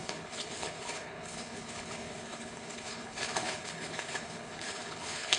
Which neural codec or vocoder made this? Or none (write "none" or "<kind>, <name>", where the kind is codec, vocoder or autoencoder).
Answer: codec, HILCodec